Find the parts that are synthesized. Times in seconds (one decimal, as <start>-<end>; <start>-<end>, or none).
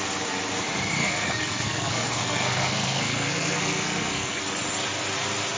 1.0-4.4